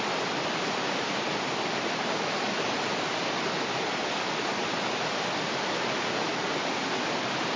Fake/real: real